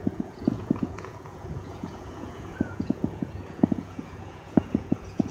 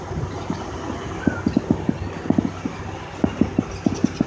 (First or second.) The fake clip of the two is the first